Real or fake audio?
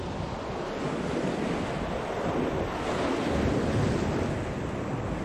real